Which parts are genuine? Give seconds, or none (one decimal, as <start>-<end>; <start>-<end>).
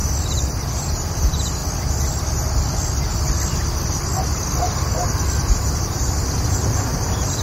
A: 0.0-0.7; 1.6-5.5